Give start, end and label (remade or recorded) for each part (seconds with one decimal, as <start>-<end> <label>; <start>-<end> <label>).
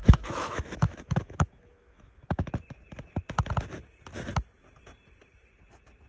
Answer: 0.0-2.5 remade; 2.5-6.1 recorded